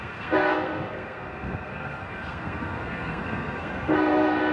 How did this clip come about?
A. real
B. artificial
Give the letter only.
B